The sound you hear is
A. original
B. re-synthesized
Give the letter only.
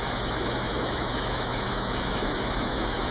B